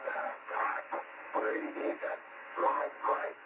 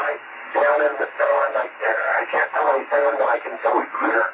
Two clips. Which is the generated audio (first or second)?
first